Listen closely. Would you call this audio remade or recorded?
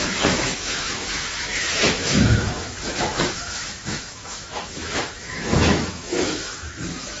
remade